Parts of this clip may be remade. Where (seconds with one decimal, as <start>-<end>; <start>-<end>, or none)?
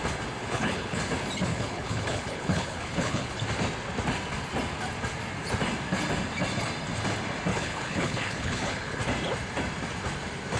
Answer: 0.4-1.0; 1.5-3.3; 7.5-9.0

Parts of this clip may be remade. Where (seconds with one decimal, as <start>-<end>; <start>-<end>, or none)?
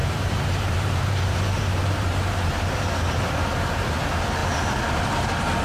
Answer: 0.0-3.4